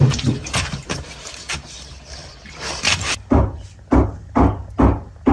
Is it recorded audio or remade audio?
remade